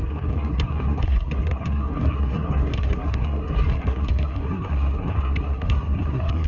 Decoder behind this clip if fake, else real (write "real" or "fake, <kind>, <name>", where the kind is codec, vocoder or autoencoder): fake, codec, SNAC